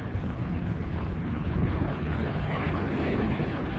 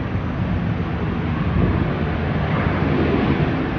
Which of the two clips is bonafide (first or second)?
second